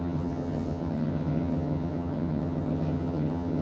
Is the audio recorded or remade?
remade